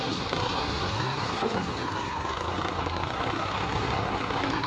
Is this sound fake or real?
fake